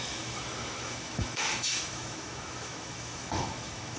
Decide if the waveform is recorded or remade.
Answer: remade